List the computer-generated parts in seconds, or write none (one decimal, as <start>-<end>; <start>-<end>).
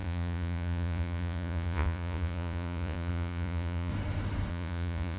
0.0-3.9; 4.5-5.2